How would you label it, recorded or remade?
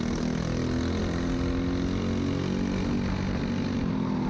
recorded